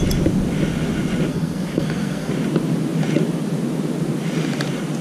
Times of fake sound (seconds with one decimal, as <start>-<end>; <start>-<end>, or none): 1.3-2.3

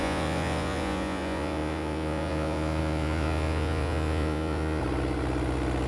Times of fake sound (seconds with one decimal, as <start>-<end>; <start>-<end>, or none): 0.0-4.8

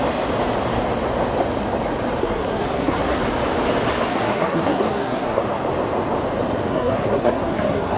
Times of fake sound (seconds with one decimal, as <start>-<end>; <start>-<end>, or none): 2.2-3.2; 4.1-5.4; 6.7-8.0

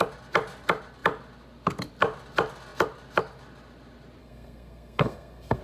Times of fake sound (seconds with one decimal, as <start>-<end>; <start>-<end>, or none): 4.2-5.6

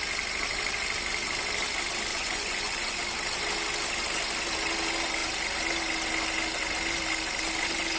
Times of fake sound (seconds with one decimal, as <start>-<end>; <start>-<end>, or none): 2.1-3.0

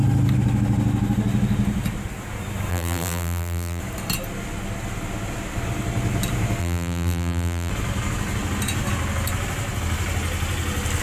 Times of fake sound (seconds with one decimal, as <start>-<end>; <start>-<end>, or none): 2.7-3.8; 6.6-7.7

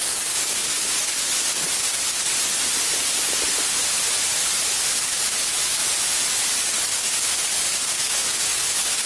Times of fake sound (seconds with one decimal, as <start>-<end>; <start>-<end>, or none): 0.0-2.3; 5.0-5.8; 6.6-9.1

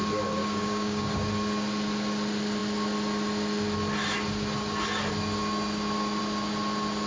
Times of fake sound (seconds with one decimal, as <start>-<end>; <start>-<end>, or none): 0.4-1.3